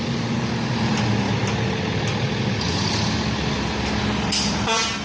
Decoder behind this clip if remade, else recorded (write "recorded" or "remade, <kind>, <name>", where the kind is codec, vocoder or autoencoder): recorded